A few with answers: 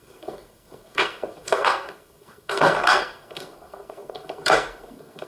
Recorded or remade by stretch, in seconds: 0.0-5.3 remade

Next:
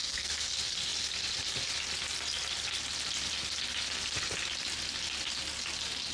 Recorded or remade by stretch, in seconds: 0.0-0.5 remade; 0.5-6.1 recorded

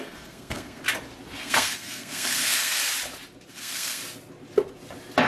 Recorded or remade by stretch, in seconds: 0.0-0.8 remade; 0.8-1.4 recorded; 1.4-2.8 remade; 2.8-3.5 recorded; 3.5-4.0 remade; 4.0-5.3 recorded

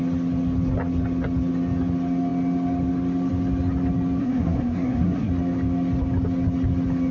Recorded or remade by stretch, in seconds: 0.0-4.2 recorded; 4.2-5.3 remade; 5.3-7.1 recorded